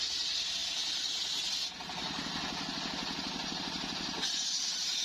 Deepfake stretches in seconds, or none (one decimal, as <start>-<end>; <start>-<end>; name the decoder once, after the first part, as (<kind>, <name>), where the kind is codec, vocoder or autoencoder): none